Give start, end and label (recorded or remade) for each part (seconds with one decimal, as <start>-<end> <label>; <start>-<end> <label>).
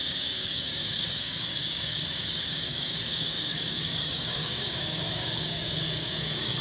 0.0-6.6 remade